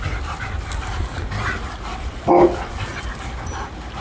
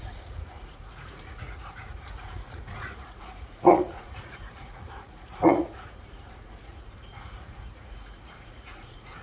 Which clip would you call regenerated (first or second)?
second